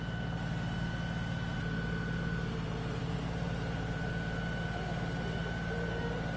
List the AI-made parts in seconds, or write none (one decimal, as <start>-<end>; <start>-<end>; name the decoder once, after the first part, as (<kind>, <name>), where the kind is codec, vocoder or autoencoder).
3.0-4.1 (vocoder, BigVGAN v2)